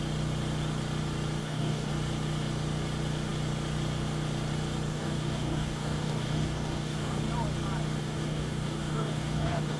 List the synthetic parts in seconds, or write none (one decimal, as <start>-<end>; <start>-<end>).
1.4-1.9; 4.9-7.2; 8.0-9.8